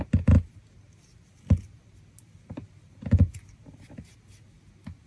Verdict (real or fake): real